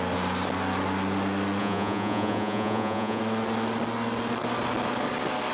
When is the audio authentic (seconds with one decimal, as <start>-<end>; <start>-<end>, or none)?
0.0-1.6; 3.2-5.5